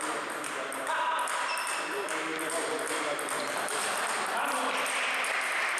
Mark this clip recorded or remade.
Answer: recorded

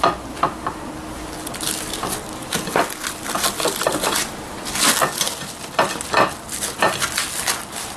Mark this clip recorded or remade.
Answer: recorded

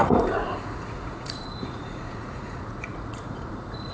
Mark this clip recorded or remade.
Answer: remade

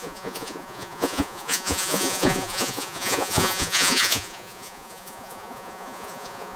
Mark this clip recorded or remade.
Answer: remade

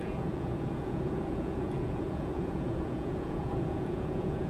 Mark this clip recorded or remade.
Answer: remade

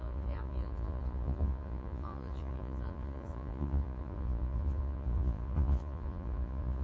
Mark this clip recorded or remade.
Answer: remade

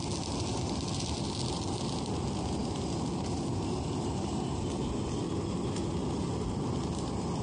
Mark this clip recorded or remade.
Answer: recorded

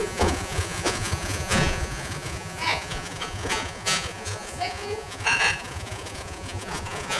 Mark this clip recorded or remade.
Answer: remade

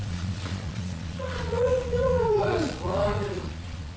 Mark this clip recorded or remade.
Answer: remade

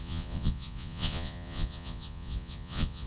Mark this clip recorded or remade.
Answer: remade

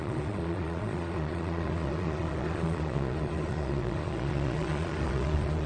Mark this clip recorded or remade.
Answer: remade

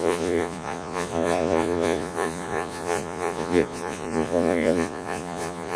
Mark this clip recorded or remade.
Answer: remade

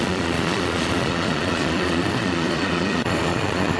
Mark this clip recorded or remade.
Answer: remade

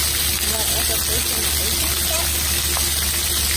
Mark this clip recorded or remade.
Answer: recorded